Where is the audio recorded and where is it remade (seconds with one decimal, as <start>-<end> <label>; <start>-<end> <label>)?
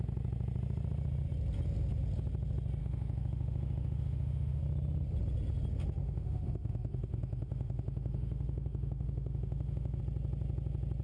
0.0-2.8 recorded; 2.8-4.6 remade; 4.6-6.0 recorded; 6.0-10.0 remade; 10.0-11.0 recorded